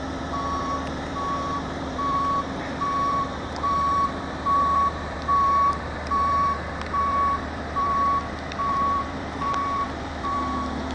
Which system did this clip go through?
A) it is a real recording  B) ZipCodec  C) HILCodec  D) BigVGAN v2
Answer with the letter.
D